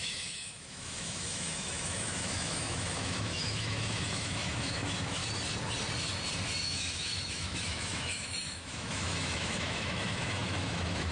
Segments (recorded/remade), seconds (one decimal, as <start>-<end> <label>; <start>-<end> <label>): 0.0-5.2 remade; 5.2-6.6 recorded; 6.6-11.1 remade